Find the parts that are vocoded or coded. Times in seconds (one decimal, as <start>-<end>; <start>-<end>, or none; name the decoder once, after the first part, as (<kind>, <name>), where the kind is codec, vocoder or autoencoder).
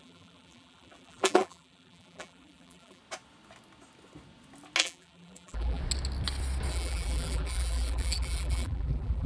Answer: 0.0-3.0 (vocoder, BigVGAN v2); 4.8-5.8; 6.7-9.3